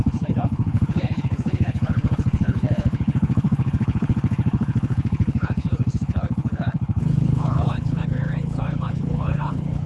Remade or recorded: remade